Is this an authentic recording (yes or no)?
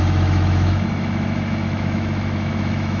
no